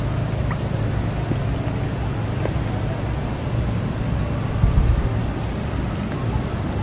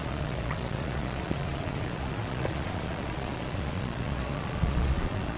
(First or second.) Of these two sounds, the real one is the first